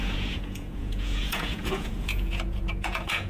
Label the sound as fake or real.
fake